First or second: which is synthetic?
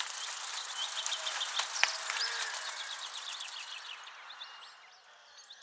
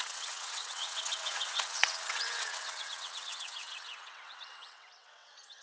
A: second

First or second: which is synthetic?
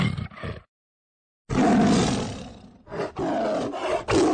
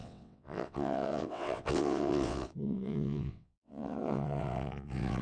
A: second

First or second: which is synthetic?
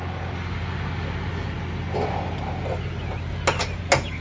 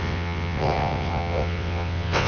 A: second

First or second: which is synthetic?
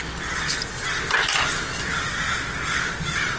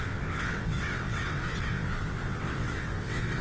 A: second